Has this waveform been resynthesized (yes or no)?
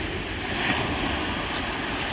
no